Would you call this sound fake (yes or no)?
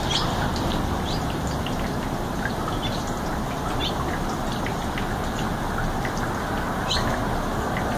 yes